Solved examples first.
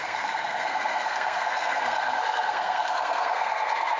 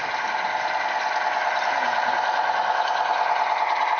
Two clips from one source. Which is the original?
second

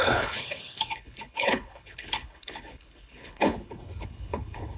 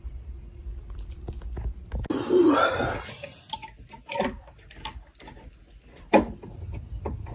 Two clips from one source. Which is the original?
second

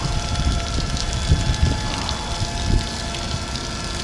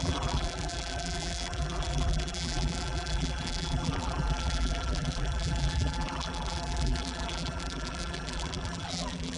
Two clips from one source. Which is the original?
first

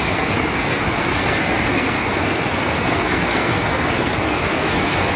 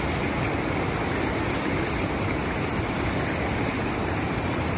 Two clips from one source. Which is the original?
second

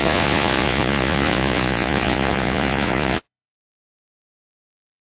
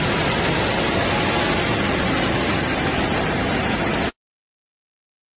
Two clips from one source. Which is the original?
second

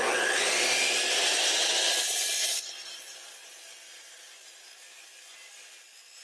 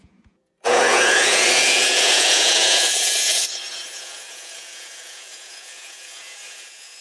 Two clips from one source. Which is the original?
first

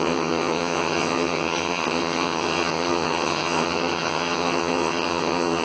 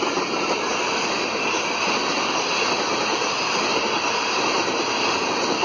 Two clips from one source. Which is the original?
second